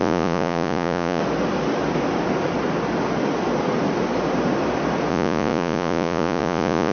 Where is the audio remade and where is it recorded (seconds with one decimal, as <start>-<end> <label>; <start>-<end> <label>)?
0.0-1.2 remade; 1.2-5.1 recorded; 5.1-6.9 remade